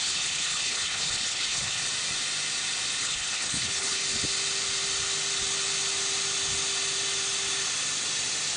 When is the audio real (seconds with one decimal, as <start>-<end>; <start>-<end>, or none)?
1.8-3.0; 4.0-8.6